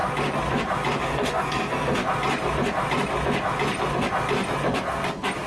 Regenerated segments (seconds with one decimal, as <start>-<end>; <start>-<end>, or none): 1.0-2.0